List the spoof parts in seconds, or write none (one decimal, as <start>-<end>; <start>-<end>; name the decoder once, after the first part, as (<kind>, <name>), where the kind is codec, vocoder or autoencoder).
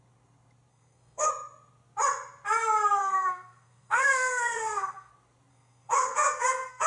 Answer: 0.7-1.3 (codec, SNAC); 3.0-5.1; 5.5-6.9